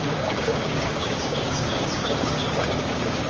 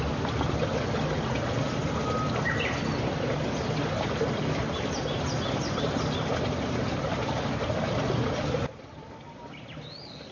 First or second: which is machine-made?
first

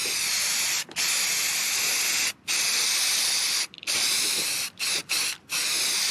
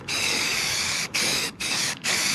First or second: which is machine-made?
second